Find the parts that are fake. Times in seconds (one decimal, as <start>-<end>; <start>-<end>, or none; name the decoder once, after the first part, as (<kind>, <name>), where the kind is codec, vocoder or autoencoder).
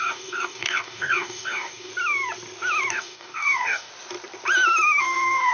0.0-1.9 (codec, DAC); 2.9-3.9; 5.0-5.5